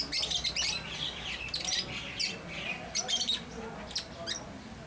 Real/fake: real